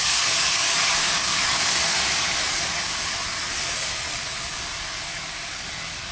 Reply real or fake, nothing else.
fake